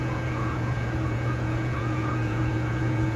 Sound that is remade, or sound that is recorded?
remade